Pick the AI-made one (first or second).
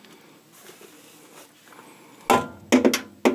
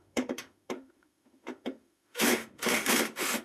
second